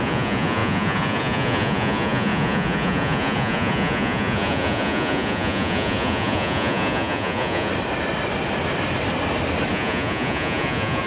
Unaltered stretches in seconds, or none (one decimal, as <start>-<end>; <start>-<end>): 7.7-9.7